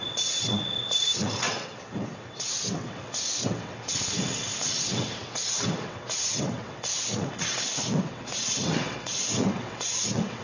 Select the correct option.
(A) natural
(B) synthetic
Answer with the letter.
B